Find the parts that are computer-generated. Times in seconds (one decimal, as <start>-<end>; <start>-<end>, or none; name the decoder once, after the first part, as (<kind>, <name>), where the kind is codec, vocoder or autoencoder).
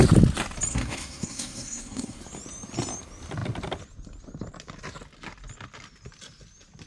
0.7-2.2 (codec, SNAC)